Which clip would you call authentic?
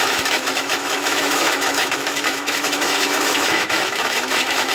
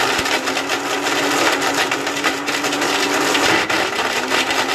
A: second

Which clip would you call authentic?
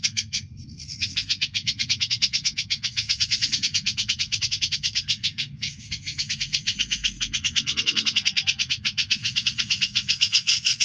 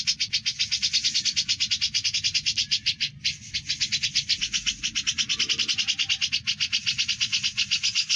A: second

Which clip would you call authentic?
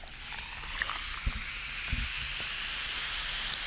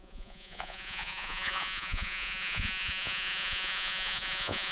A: first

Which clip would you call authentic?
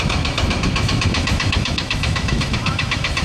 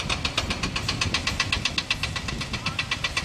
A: second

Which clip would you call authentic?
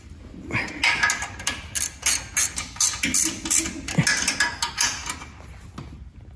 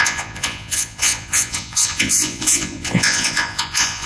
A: first